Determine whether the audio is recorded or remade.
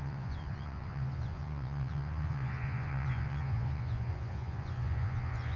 remade